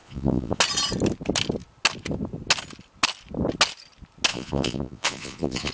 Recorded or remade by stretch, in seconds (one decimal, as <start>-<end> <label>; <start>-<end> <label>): 0.0-0.6 remade; 0.6-4.3 recorded; 4.3-5.7 remade